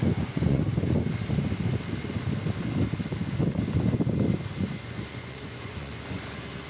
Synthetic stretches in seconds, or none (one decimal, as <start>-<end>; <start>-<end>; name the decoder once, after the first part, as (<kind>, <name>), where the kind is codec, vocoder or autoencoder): 0.0-0.6 (vocoder, Vocos); 4.6-6.7